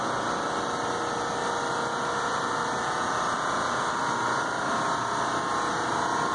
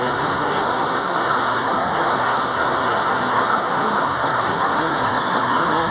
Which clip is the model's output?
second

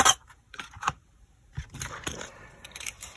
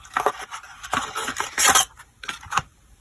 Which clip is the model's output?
first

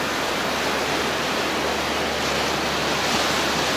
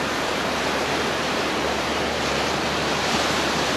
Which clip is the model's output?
second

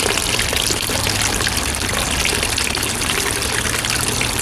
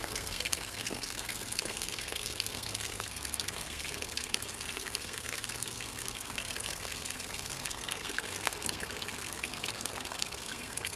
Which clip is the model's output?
second